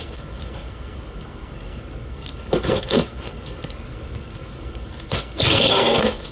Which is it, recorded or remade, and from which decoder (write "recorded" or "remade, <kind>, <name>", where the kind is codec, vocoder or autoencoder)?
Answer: remade, codec, SNAC